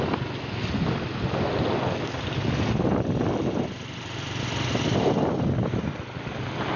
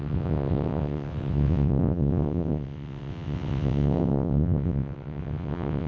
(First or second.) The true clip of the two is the first